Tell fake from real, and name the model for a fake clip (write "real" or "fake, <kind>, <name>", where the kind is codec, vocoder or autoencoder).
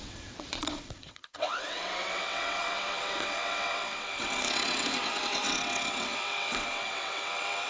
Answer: fake, vocoder, WaveNeXt